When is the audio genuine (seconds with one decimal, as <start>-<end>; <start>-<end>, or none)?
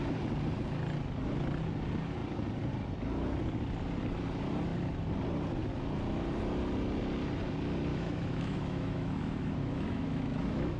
0.0-7.9